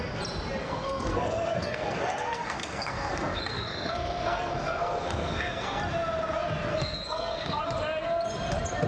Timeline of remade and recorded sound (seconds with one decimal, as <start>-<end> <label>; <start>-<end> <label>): 0.0-0.6 recorded; 0.6-5.8 remade; 5.8-6.7 recorded; 6.7-7.6 remade; 7.6-8.9 recorded